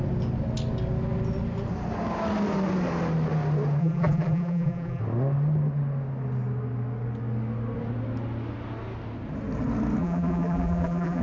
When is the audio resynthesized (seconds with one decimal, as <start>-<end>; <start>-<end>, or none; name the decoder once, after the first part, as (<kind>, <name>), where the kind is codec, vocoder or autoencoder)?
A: 3.8-5.0 (vocoder, BigVGAN v2); 10.0-11.2